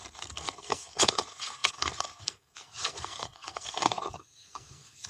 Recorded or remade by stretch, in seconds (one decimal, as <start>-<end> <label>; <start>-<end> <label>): 0.0-5.1 remade